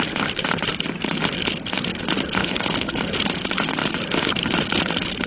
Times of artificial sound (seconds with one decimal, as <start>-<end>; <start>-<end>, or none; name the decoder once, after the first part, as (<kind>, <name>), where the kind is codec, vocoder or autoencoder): 2.4-3.0 (codec, HILCodec)